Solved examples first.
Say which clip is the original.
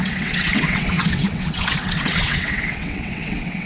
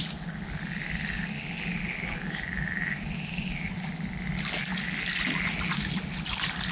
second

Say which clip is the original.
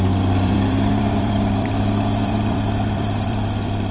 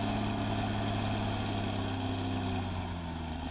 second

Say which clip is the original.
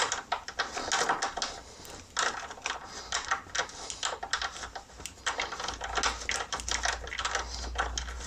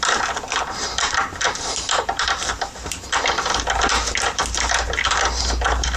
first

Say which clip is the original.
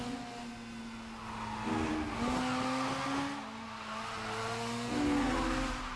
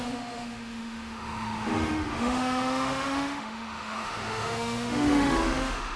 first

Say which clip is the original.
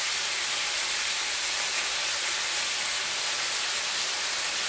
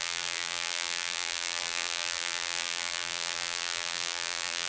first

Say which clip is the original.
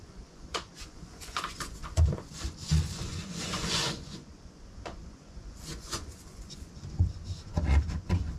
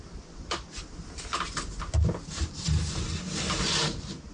second